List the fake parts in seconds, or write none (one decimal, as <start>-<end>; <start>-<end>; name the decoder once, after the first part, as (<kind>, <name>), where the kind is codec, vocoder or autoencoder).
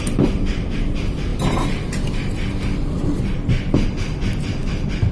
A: 0.0-1.3 (vocoder, BigVGAN v2); 4.4-5.1